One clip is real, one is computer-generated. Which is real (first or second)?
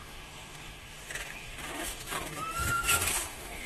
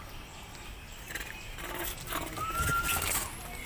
second